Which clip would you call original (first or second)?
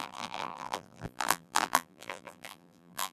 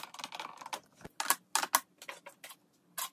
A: second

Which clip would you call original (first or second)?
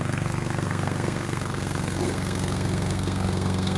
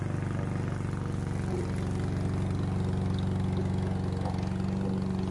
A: second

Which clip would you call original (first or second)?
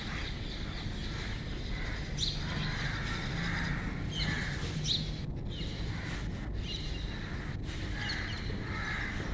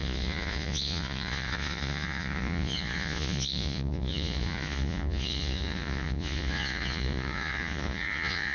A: first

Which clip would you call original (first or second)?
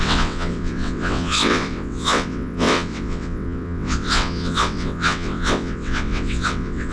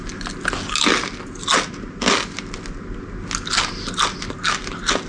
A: second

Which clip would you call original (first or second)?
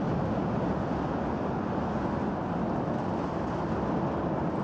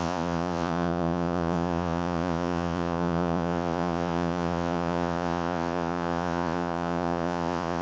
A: first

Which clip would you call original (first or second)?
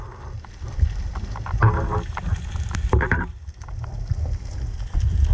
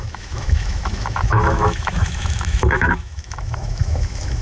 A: first